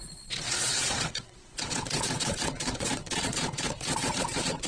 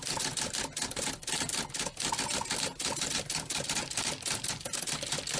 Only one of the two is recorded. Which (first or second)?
second